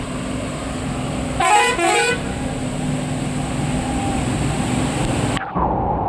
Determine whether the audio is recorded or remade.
recorded